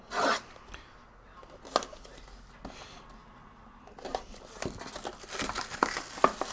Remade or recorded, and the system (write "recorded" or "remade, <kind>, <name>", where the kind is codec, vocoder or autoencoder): recorded